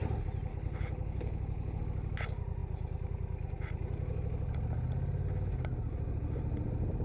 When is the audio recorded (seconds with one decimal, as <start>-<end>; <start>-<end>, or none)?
0.0-0.5; 1.8-7.0